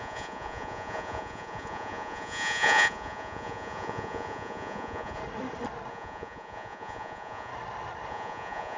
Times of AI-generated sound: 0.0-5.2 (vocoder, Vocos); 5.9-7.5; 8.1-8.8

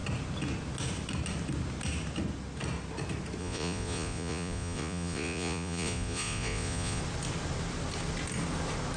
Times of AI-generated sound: 3.4-7.0 (vocoder, Vocos)

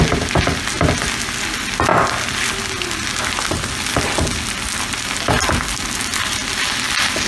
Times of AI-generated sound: none